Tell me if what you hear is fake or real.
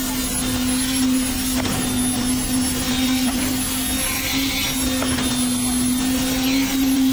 real